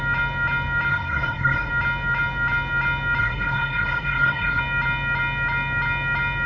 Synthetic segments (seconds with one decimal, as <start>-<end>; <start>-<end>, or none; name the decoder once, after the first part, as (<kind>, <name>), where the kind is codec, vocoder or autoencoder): 0.9-1.7 (codec, SNAC); 3.2-4.6